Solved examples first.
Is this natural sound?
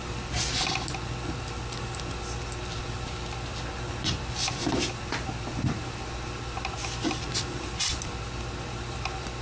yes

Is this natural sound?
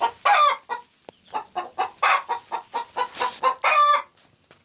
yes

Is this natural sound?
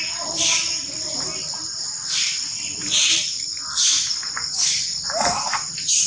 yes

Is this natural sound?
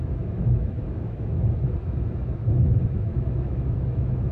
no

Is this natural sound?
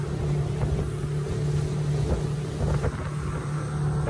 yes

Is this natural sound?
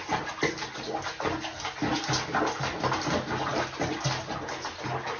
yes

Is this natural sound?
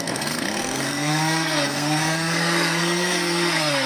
no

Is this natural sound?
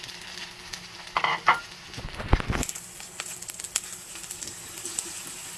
yes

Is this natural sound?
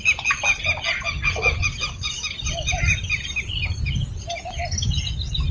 yes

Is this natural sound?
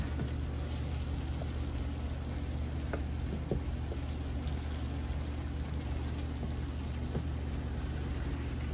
yes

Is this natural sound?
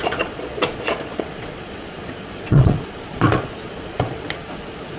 no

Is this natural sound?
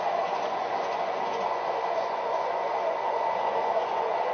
no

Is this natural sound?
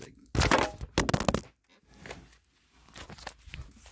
yes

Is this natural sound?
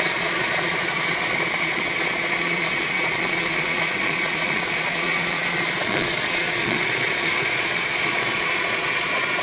no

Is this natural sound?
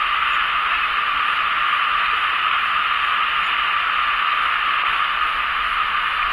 yes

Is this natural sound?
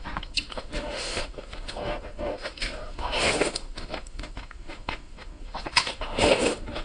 no